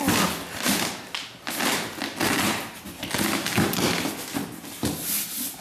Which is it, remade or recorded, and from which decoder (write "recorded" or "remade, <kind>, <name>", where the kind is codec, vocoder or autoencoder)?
recorded